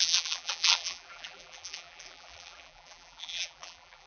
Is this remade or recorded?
remade